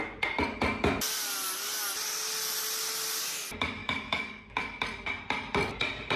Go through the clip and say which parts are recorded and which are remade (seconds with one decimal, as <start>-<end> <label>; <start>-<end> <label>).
0.0-3.8 recorded; 3.8-4.8 remade; 4.8-6.2 recorded